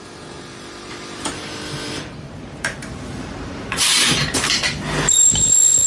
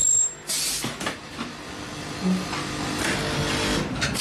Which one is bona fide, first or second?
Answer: second